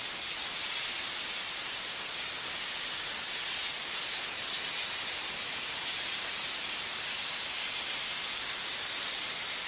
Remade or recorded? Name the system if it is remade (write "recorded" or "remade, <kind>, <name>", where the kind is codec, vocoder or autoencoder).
recorded